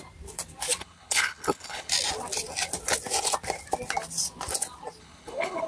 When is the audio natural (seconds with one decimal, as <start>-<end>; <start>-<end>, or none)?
0.0-0.8; 1.9-5.0